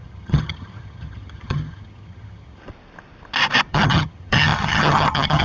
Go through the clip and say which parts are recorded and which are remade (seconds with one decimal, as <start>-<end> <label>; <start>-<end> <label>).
0.0-2.6 remade; 2.6-3.7 recorded; 3.7-5.4 remade